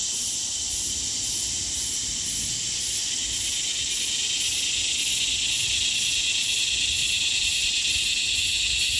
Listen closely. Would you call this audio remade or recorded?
recorded